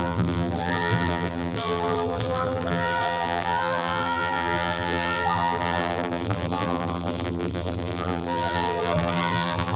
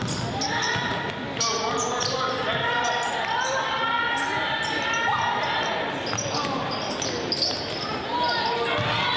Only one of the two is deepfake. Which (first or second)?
first